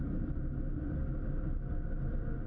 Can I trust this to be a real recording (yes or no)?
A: yes